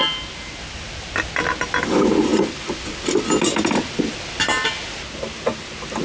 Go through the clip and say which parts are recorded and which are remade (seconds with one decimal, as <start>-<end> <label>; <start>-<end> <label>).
0.0-6.0 recorded